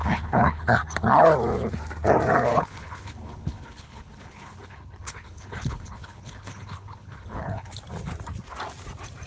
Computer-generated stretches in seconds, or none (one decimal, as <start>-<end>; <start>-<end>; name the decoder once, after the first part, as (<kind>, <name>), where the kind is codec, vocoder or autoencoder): 0.0-0.6 (codec, HILCodec); 2.5-7.7